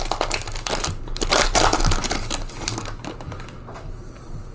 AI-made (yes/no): no